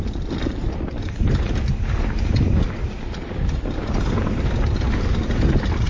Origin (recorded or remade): recorded